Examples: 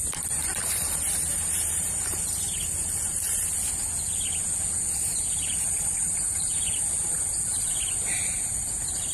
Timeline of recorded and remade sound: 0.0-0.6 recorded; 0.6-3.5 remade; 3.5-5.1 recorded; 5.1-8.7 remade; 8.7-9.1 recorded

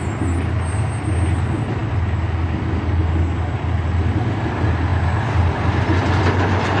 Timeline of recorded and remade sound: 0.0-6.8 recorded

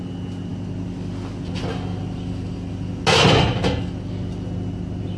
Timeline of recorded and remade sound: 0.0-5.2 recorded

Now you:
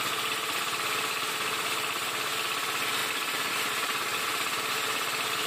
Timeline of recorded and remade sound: 0.0-5.5 recorded

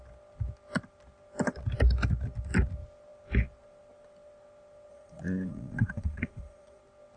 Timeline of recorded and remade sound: 0.0-4.9 recorded; 4.9-6.8 remade; 6.8-7.2 recorded

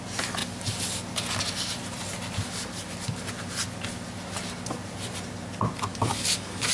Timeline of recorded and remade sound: 0.0-5.9 recorded; 5.9-6.7 remade

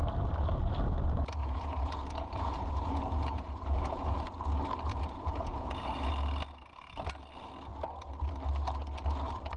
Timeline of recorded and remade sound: 0.0-1.4 recorded; 1.4-4.2 remade; 4.2-4.9 recorded; 4.9-6.1 remade; 6.1-9.6 recorded